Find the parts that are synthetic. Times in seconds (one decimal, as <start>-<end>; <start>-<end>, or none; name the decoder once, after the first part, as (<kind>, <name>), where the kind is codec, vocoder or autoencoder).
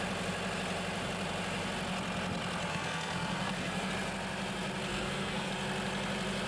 2.7-3.9 (codec, SNAC); 4.9-5.5